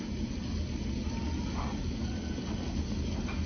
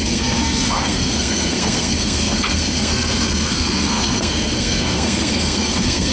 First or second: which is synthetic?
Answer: second